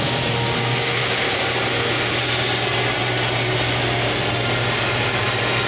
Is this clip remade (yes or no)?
no